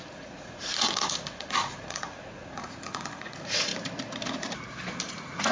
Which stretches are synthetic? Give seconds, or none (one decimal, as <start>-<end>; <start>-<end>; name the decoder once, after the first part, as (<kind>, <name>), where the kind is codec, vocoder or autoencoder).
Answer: 0.0-3.7 (vocoder, Vocos); 5.1-5.5